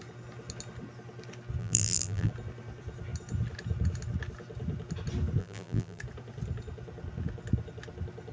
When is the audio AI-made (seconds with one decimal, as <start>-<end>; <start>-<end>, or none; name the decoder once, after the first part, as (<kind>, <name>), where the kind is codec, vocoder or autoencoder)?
1.6-2.3 (vocoder, BigVGAN v2); 5.4-6.0